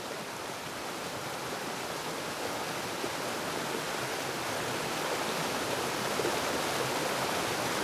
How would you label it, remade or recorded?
recorded